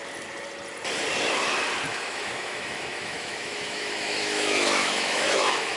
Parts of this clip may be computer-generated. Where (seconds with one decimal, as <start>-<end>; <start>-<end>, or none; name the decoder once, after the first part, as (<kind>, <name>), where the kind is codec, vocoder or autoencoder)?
1.9-5.8 (autoencoder, DAC-VAE)